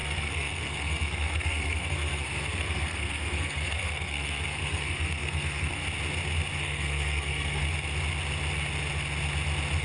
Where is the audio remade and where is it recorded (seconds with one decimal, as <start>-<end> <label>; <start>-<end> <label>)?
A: 0.0-5.8 remade; 5.8-6.6 recorded; 6.6-7.6 remade; 7.6-9.8 recorded